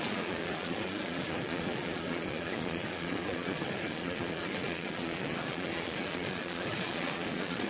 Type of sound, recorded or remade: remade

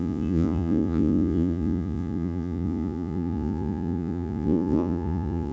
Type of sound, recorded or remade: remade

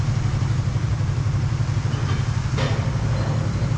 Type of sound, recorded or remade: recorded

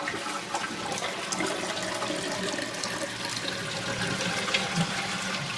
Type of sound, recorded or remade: recorded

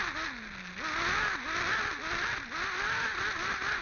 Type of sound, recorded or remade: recorded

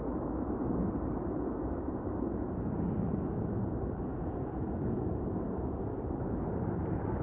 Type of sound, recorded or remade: recorded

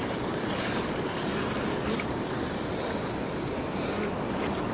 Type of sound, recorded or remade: recorded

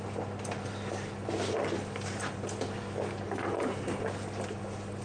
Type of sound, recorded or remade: recorded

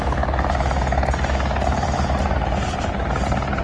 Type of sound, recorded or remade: recorded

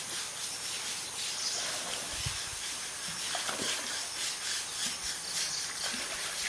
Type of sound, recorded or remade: recorded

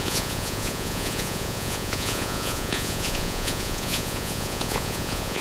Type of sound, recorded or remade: remade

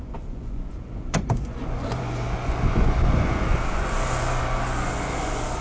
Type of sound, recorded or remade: remade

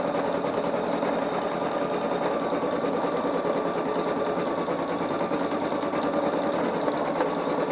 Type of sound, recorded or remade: recorded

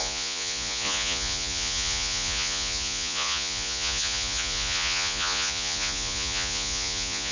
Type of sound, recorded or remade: remade